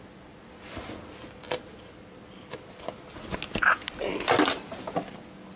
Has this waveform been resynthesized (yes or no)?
no